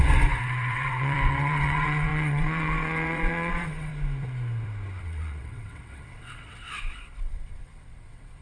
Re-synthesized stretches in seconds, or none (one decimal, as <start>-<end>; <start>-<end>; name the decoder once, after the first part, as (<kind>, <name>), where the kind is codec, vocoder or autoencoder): 0.0-3.9 (vocoder, WaveNeXt); 5.0-8.4

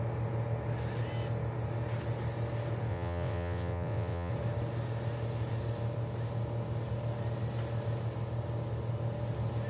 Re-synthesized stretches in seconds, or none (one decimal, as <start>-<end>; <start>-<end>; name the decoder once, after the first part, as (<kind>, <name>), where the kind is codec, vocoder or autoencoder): 2.9-4.3 (vocoder, WaveNeXt)